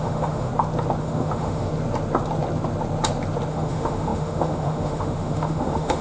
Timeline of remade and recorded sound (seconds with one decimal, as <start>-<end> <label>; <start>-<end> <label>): 0.0-0.5 remade; 0.5-1.0 recorded; 1.0-1.7 remade; 1.7-3.5 recorded; 3.5-6.0 remade